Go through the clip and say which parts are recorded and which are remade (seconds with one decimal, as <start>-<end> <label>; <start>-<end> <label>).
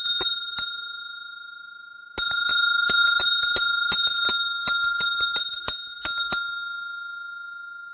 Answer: 0.0-7.9 recorded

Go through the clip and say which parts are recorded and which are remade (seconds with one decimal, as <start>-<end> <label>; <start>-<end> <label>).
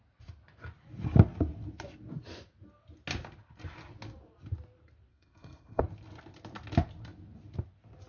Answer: 0.0-5.1 recorded; 5.1-5.8 remade; 5.8-8.1 recorded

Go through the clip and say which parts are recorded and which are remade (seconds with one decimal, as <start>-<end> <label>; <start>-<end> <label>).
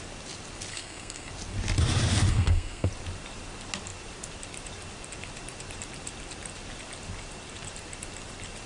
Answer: 0.0-0.7 recorded; 0.7-1.3 remade; 1.3-2.3 recorded; 2.3-2.9 remade; 2.9-8.7 recorded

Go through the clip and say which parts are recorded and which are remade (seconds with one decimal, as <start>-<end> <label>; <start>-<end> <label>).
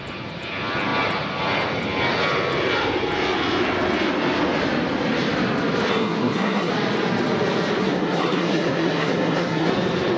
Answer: 0.0-5.9 recorded; 5.9-6.7 remade; 6.7-7.8 recorded; 7.8-9.7 remade; 9.7-10.2 recorded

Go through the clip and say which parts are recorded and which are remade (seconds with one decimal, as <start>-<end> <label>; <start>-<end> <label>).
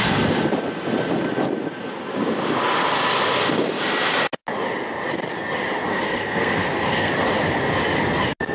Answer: 0.0-5.9 recorded; 5.9-7.1 remade; 7.1-8.5 recorded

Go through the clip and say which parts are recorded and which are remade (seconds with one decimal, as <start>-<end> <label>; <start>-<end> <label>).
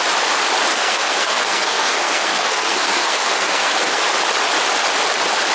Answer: 0.0-0.7 recorded; 0.7-4.0 remade; 4.0-5.5 recorded